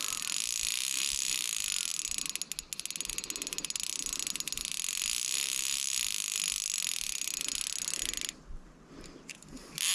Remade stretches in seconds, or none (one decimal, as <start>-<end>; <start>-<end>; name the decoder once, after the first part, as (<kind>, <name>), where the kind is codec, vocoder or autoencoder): none